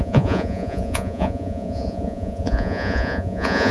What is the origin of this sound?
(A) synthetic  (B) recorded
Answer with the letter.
A